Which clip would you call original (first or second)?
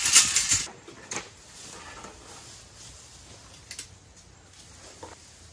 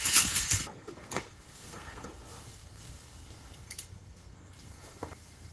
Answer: first